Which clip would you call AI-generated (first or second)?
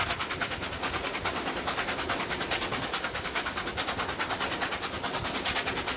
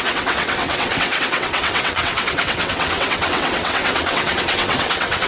second